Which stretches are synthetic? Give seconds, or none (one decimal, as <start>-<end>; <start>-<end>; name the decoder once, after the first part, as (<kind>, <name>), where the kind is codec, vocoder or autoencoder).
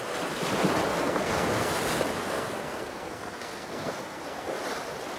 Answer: 0.9-1.7 (codec, SNAC); 2.2-4.6